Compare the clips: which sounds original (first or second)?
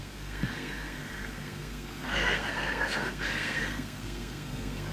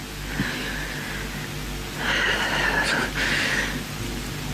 second